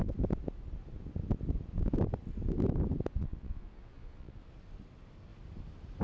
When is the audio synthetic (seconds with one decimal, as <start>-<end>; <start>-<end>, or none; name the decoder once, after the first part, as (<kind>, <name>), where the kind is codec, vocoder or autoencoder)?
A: 3.2-4.4 (vocoder, Vocos)